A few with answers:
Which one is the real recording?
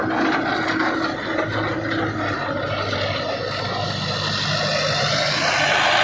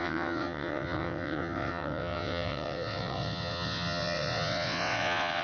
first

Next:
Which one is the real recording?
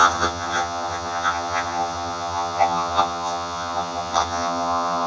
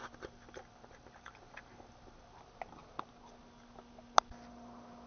second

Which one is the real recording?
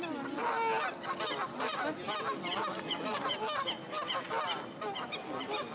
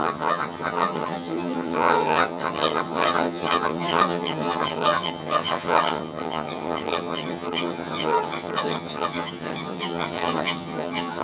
first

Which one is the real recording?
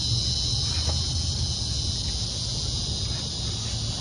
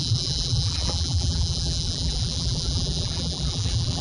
first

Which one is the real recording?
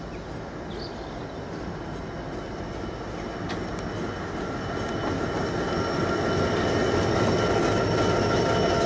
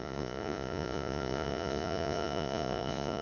first